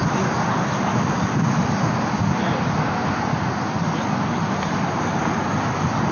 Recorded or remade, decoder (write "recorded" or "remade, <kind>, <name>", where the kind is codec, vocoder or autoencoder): remade, vocoder, BigVGAN v2